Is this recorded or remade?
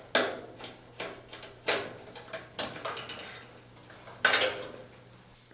recorded